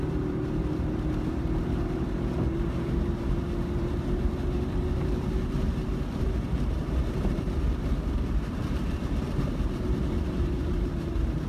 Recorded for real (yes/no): no